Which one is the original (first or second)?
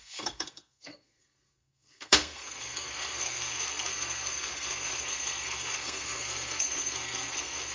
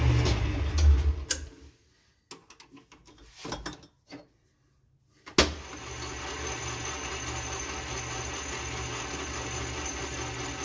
second